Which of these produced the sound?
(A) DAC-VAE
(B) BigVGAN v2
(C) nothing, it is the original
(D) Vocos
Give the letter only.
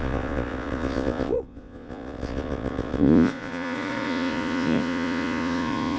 D